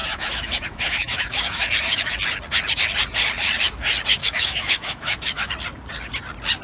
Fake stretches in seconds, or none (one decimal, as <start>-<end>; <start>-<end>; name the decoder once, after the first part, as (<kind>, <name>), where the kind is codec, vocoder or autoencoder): 0.0-2.1 (autoencoder, DAC-VAE); 4.2-5.5